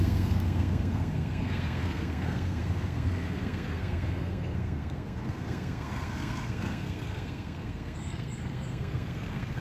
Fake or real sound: fake